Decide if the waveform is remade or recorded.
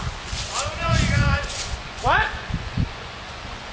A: remade